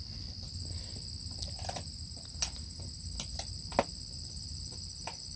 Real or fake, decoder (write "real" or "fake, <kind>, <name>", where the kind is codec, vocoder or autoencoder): real